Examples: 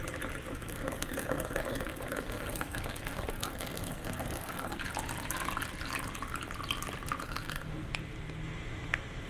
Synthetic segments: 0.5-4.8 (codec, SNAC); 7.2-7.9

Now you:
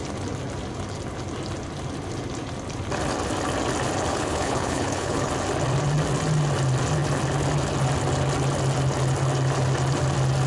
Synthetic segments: 4.1-5.3 (codec, HILCodec)

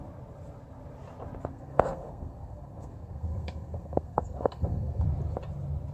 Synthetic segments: 1.5-5.0 (codec, SNAC)

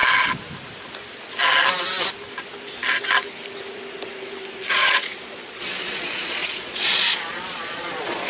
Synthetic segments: 4.7-8.3 (vocoder, Vocos)